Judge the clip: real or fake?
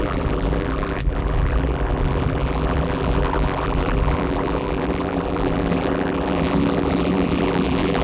fake